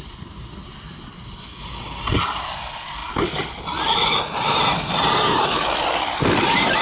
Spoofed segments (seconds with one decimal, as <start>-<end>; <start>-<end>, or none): none